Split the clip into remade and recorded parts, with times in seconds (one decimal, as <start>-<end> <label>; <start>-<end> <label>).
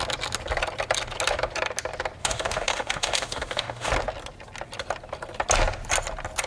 0.0-2.2 recorded; 2.2-3.9 remade; 3.9-6.5 recorded